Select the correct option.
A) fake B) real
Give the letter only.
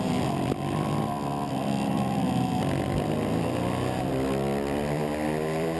A